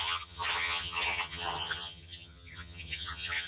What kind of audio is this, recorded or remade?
remade